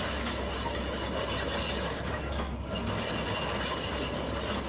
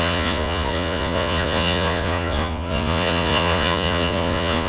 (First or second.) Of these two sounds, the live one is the first